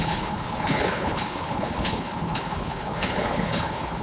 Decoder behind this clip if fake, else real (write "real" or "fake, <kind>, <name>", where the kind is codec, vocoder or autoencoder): fake, codec, HILCodec